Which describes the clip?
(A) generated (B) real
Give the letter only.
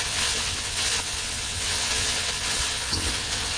A